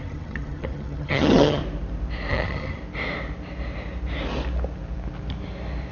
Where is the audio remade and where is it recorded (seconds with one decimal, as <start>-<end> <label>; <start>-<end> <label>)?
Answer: 0.0-1.6 remade; 1.6-2.3 recorded; 2.3-2.8 remade; 2.8-5.9 recorded